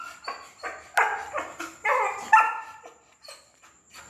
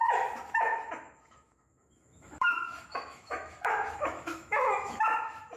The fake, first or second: second